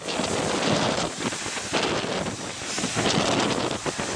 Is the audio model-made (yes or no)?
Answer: no